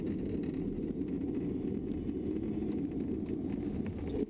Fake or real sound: real